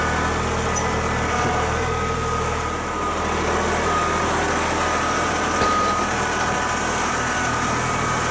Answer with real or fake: real